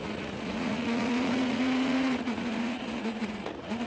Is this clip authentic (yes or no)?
no